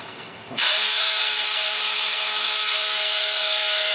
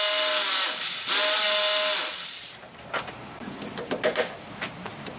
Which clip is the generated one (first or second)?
first